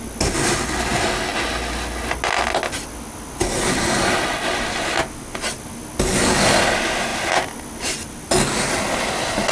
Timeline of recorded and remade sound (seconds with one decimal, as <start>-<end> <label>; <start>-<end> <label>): 0.0-9.5 recorded